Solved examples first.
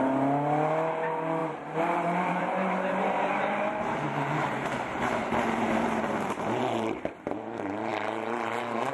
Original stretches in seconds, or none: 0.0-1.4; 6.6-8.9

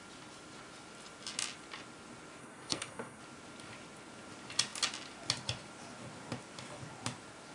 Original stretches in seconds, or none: 0.0-2.4; 3.2-7.5